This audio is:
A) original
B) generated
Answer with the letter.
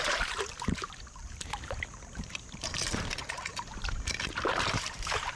B